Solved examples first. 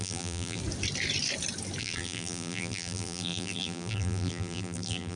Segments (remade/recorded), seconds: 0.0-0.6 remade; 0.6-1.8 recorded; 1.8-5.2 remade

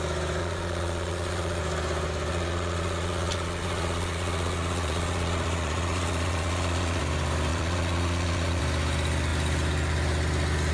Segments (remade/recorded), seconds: 0.0-0.4 recorded; 0.4-1.6 remade; 1.6-2.3 recorded; 2.3-7.0 remade; 7.0-7.5 recorded; 7.5-8.6 remade; 8.6-10.7 recorded

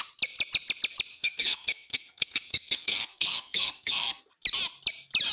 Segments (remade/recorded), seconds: 0.0-1.1 recorded; 1.1-4.3 remade; 4.3-5.3 recorded

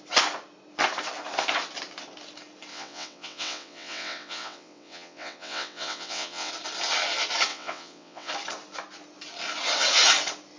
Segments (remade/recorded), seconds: 0.0-2.7 recorded; 2.7-6.5 remade; 6.5-7.5 recorded; 7.5-8.3 remade; 8.3-10.6 recorded